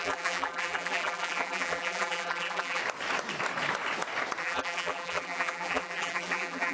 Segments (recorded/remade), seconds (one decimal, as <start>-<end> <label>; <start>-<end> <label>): 0.0-2.8 remade; 2.8-4.4 recorded; 4.4-6.7 remade